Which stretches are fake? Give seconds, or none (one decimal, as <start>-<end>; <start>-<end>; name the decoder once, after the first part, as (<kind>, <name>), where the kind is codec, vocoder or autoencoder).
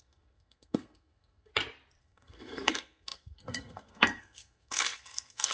0.0-1.5 (codec, SNAC); 2.0-5.5